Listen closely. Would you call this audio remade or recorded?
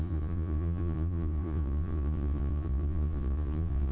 remade